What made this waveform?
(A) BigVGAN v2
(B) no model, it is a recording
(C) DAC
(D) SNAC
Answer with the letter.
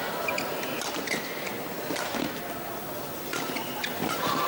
B